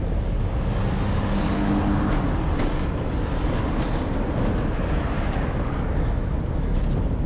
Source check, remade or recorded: recorded